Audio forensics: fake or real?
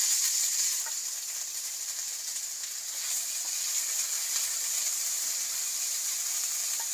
real